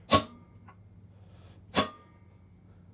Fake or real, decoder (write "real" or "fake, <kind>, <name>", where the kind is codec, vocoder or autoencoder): real